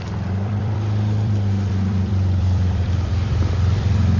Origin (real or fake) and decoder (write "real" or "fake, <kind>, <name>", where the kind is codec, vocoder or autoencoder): fake, vocoder, BigVGAN v2